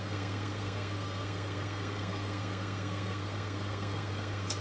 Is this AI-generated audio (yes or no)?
yes